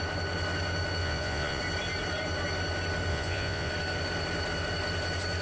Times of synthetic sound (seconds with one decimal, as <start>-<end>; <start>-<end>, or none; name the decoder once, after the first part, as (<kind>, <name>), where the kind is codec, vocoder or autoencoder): 1.0-1.6 (vocoder, Vocos); 3.1-3.7